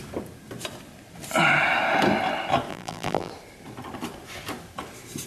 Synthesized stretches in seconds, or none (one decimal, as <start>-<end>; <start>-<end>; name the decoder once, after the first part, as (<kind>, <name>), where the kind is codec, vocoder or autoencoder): 2.7-3.3 (vocoder, BigVGAN v2)